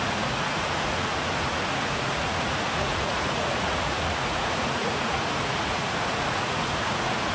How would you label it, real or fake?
fake